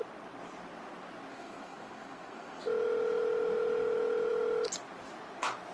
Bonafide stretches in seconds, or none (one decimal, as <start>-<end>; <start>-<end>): 0.0-1.3; 2.6-5.7